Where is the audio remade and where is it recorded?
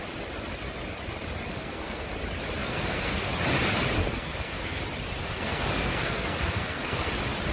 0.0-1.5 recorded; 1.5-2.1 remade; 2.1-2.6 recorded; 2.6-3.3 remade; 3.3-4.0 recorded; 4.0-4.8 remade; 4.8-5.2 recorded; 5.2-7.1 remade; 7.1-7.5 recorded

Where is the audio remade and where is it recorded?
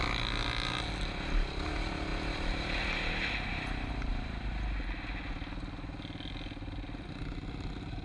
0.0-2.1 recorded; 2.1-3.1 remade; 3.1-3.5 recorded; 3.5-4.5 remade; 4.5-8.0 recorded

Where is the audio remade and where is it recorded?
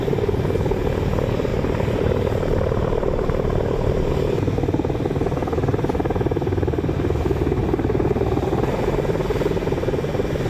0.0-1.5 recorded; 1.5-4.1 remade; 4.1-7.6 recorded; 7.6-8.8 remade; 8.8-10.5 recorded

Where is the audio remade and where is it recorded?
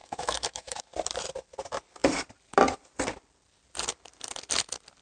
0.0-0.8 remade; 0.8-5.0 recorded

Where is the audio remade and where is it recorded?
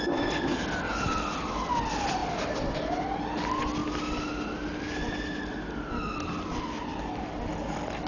0.0-8.1 recorded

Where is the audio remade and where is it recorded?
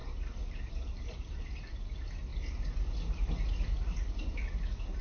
0.0-2.3 remade; 2.3-5.0 recorded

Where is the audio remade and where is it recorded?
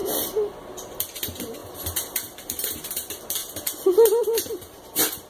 0.0-1.6 recorded; 1.6-2.7 remade; 2.7-3.4 recorded; 3.4-5.3 remade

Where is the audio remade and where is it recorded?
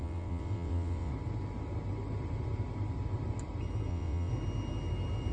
0.0-1.1 remade; 1.1-3.9 recorded; 3.9-4.3 remade; 4.3-5.3 recorded